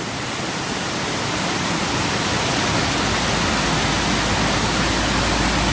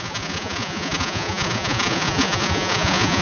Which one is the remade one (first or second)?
second